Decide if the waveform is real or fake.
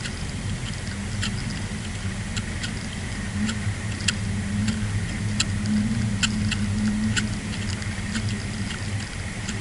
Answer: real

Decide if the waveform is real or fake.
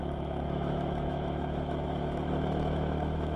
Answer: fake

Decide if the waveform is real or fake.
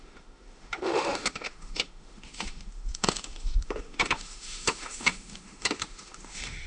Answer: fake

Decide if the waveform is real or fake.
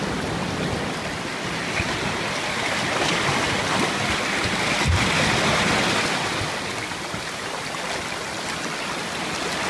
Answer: real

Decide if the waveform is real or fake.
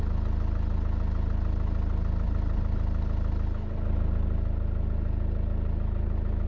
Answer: real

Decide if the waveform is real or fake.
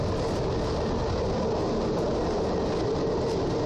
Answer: real